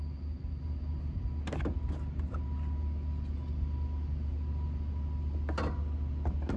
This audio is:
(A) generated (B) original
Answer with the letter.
B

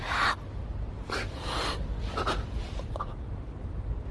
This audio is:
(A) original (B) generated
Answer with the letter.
A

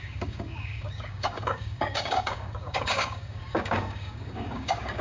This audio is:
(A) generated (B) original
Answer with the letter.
A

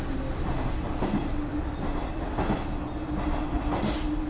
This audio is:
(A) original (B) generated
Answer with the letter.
A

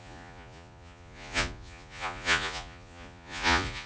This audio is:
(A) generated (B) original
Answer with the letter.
A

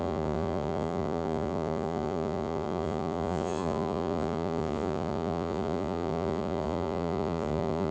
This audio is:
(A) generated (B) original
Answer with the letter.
A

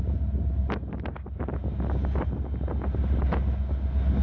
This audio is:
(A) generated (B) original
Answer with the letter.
B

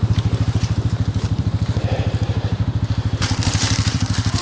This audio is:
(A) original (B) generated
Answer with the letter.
B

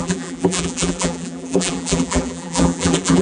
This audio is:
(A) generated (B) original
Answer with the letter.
A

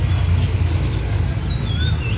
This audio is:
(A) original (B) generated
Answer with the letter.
A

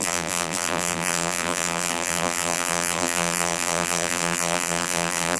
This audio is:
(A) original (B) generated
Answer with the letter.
B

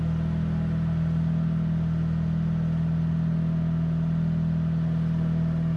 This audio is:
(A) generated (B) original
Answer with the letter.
B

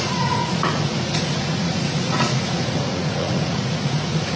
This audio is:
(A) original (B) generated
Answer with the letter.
B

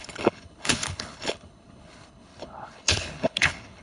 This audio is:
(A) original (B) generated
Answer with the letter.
B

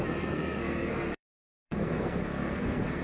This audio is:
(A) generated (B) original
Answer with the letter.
A